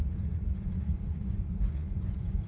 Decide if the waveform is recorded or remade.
remade